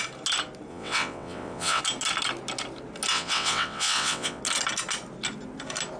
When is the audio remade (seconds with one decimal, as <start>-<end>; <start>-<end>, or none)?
0.7-1.8; 3.1-4.4